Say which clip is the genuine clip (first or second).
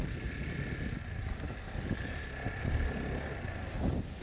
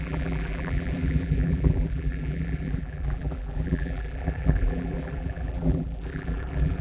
first